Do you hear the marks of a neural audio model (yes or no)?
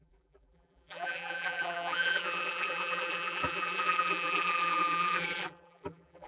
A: yes